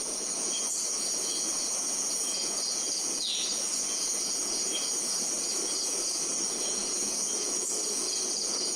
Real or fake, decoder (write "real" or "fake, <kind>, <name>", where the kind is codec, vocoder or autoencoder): fake, vocoder, Vocos